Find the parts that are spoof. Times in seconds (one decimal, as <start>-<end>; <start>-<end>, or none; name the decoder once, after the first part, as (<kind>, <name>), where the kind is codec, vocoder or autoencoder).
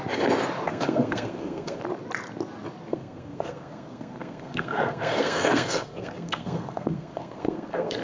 0.7-1.8 (codec, SNAC); 2.9-8.0